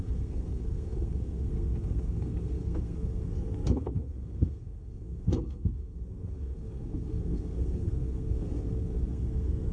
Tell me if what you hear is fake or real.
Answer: fake